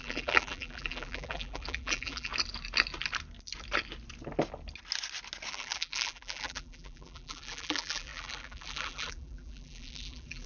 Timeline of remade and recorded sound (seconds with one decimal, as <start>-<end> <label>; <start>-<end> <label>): 0.0-2.3 remade; 2.3-5.5 recorded; 5.5-10.5 remade